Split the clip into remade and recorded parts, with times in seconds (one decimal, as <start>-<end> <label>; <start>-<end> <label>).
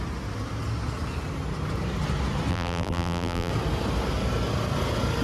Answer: 0.0-2.5 recorded; 2.5-3.5 remade; 3.5-5.2 recorded